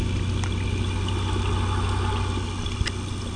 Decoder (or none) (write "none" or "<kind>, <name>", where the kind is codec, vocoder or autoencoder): none